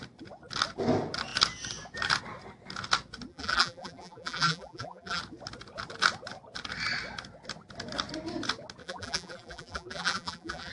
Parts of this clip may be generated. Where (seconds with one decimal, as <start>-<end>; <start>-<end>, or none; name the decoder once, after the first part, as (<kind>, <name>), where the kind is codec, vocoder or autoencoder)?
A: 3.3-5.2 (vocoder, BigVGAN v2); 8.8-10.7